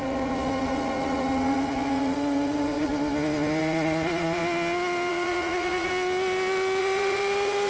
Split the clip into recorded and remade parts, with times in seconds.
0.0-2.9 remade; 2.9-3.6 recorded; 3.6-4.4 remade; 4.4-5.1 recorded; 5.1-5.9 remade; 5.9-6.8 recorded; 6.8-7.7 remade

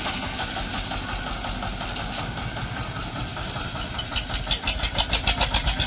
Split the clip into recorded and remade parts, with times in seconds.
0.0-5.9 recorded

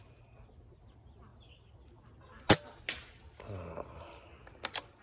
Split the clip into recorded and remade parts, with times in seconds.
0.0-5.0 recorded

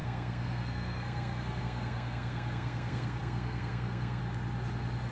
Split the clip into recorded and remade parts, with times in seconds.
0.0-4.2 remade; 4.2-5.1 recorded

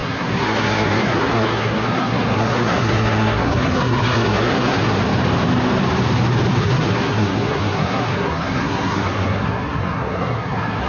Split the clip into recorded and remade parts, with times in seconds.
0.0-5.0 remade; 5.0-6.6 recorded; 6.6-10.9 remade

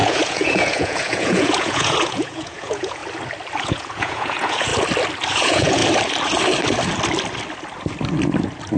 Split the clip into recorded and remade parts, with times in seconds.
0.0-3.0 remade; 3.0-3.6 recorded; 3.6-4.7 remade; 4.7-5.3 recorded; 5.3-5.8 remade; 5.8-8.8 recorded